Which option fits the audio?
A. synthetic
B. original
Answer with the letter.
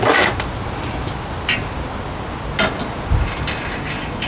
B